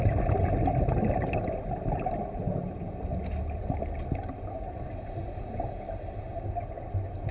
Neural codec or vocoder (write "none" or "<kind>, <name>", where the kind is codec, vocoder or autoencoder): none